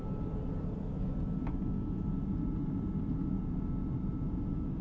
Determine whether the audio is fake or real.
real